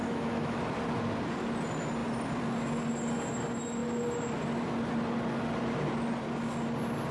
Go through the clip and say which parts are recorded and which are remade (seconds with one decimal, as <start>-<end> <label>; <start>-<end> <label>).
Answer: 0.0-0.6 remade; 0.6-7.1 recorded